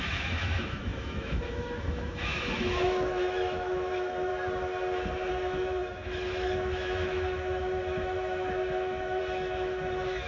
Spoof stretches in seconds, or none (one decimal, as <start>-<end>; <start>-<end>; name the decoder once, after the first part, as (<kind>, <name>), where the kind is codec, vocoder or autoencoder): 0.0-4.3 (autoencoder, DAC-VAE); 5.3-10.3